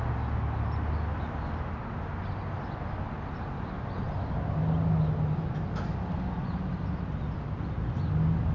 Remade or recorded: recorded